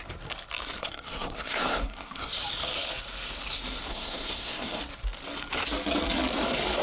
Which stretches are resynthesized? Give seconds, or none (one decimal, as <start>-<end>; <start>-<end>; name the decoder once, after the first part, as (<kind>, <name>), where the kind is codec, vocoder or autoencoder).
0.8-2.3 (codec, SNAC); 3.9-4.8